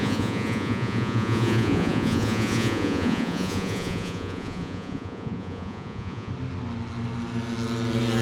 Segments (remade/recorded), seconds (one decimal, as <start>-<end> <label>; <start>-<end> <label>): 0.0-6.3 remade; 6.3-8.2 recorded